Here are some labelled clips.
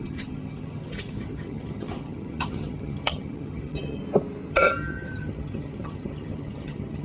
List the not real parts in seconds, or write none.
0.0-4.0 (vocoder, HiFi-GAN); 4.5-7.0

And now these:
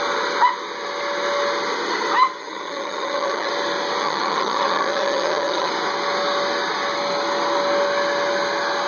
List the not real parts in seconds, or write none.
2.4-3.5 (vocoder, HiFi-GAN); 4.0-5.7

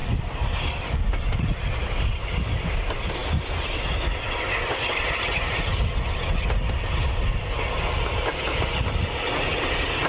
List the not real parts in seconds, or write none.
none

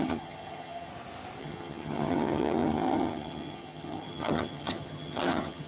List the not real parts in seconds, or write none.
0.0-0.9 (vocoder, HiFi-GAN); 1.4-5.7

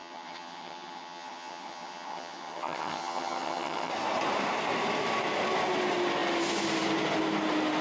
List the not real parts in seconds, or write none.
0.0-3.9 (vocoder, HiFi-GAN)

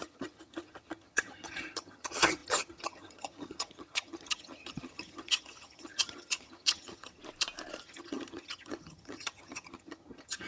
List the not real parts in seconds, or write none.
0.0-7.2 (vocoder, HiFi-GAN); 7.8-10.5